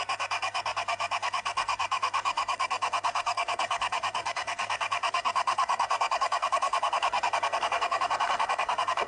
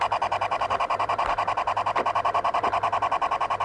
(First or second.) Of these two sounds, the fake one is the first